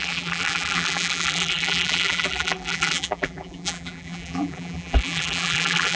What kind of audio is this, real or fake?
fake